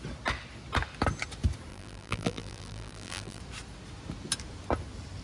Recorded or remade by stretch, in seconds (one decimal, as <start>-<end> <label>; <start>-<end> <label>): 0.0-1.7 recorded; 1.7-3.4 remade; 3.4-5.2 recorded